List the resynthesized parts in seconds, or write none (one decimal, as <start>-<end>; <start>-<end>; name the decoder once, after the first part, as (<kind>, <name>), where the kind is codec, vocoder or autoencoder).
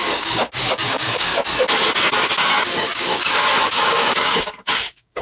0.0-1.3 (codec, DAC); 2.8-5.2